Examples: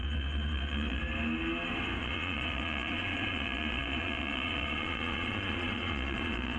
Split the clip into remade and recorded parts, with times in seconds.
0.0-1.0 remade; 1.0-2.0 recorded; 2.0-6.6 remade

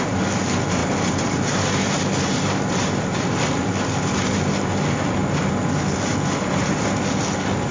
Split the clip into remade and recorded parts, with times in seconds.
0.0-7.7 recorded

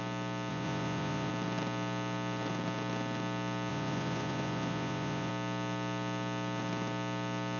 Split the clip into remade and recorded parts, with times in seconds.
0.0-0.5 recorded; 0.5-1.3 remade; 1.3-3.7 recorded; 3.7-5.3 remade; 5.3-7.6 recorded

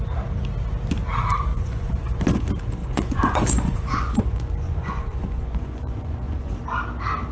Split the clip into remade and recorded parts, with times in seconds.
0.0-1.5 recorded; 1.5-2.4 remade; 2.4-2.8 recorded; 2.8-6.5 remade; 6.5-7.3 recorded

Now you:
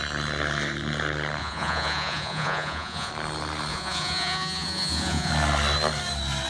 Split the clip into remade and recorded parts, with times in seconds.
0.0-1.4 recorded; 1.4-3.1 remade; 3.1-3.7 recorded; 3.7-5.3 remade; 5.3-6.5 recorded

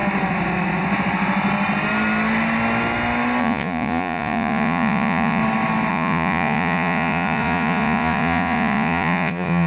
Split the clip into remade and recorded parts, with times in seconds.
0.0-3.4 recorded; 3.4-5.4 remade; 5.4-5.9 recorded; 5.9-9.7 remade